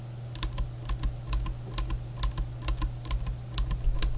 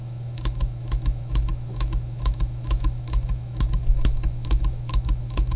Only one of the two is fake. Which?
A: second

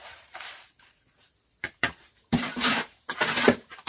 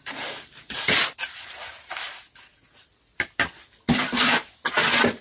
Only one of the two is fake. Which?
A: first